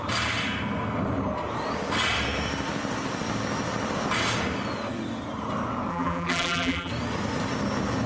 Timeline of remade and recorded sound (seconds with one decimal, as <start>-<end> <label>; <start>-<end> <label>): 0.0-5.9 recorded; 5.9-6.9 remade; 6.9-8.1 recorded